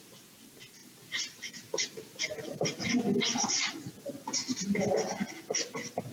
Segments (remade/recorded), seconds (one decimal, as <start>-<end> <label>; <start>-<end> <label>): 0.0-0.8 recorded; 0.8-2.9 remade; 2.9-6.1 recorded